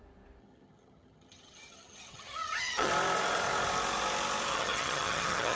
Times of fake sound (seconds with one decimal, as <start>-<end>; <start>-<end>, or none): 0.4-2.9; 4.5-5.6